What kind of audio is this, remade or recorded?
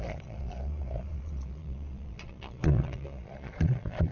remade